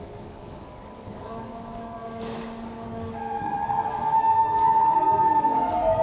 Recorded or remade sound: remade